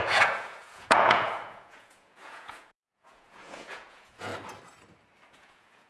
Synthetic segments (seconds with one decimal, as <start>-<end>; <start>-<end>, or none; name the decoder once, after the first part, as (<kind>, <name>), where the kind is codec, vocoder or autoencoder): 0.0-4.3 (vocoder, Vocos); 5.3-5.9